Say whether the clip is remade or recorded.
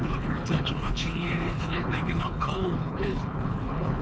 remade